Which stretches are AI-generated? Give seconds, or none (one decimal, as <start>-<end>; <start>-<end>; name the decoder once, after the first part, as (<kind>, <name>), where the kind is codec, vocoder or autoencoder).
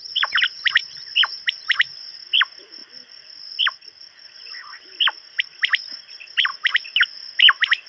none